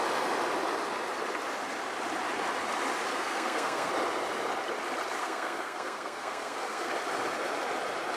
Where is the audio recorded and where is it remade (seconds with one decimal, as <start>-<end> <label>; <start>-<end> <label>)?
0.0-3.1 recorded; 3.1-3.9 remade; 3.9-5.2 recorded; 5.2-6.9 remade; 6.9-8.2 recorded